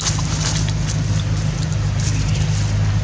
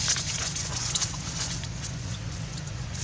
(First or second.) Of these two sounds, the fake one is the second